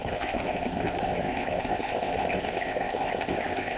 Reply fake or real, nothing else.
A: fake